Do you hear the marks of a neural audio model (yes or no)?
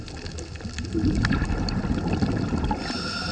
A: no